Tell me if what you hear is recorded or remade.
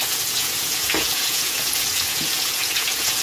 remade